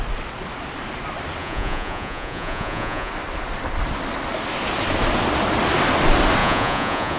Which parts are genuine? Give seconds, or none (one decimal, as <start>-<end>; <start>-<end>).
0.0-1.4; 3.1-6.4